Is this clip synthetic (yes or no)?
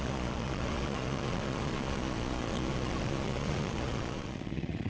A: yes